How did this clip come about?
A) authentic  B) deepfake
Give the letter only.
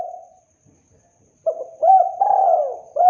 B